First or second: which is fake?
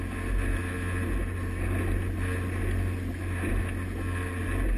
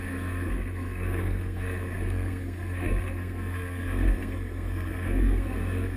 second